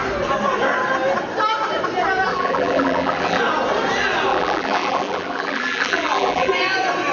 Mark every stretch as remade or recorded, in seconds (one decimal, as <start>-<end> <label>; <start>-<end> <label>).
0.0-2.3 recorded; 2.3-3.4 remade; 3.4-4.3 recorded; 4.3-6.5 remade; 6.5-7.1 recorded